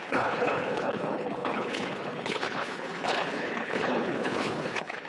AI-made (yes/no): yes